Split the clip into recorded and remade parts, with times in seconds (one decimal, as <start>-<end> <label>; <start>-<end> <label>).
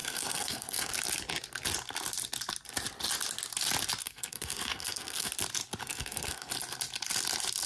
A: 0.0-0.9 remade; 0.9-4.0 recorded; 4.0-5.3 remade; 5.3-5.8 recorded; 5.8-6.5 remade; 6.5-7.7 recorded